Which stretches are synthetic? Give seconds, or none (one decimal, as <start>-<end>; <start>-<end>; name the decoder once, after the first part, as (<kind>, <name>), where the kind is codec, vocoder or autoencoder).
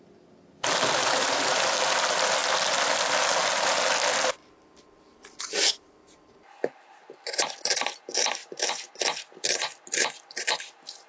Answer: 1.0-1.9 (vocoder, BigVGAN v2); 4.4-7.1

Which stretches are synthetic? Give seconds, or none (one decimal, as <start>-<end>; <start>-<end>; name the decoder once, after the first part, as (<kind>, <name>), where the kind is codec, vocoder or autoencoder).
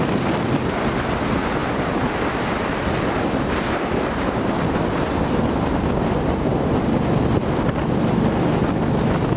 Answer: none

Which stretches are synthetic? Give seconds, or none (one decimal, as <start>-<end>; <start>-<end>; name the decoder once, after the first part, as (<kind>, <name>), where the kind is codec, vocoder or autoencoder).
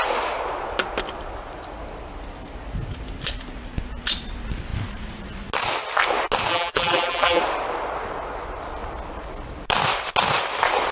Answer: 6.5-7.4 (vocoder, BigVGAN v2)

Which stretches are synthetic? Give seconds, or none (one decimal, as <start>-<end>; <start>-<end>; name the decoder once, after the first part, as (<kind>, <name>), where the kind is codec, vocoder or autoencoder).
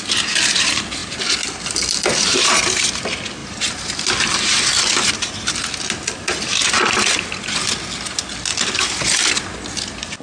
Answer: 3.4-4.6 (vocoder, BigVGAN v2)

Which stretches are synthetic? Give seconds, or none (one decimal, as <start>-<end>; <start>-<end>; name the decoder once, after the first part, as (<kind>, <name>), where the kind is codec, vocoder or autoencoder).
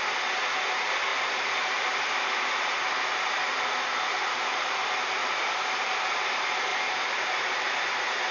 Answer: 1.1-1.8 (vocoder, BigVGAN v2); 5.2-5.8; 6.7-8.3